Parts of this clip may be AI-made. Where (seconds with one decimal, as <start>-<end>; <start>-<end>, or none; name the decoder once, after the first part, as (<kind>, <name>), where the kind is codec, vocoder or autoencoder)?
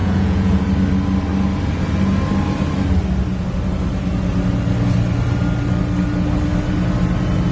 0.0-0.6 (vocoder, Vocos)